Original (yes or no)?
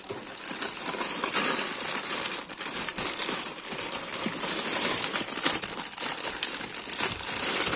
no